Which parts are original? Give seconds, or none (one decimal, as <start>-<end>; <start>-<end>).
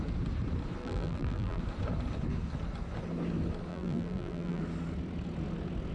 0.0-0.8; 1.6-3.7; 4.6-5.9